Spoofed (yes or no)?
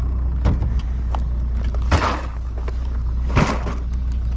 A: no